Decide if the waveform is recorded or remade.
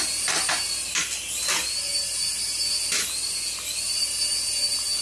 recorded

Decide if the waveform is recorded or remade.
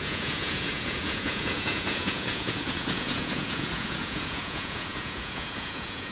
remade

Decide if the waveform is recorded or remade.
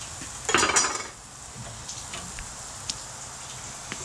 recorded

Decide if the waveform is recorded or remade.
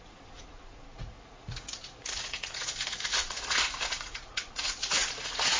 remade